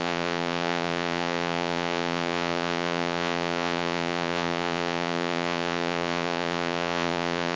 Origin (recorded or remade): remade